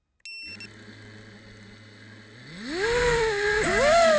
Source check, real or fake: real